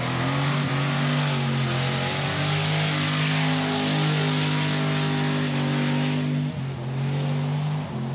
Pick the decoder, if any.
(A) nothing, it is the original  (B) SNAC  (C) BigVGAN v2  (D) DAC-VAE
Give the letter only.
A